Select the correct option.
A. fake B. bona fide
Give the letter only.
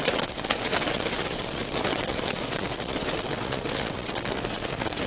A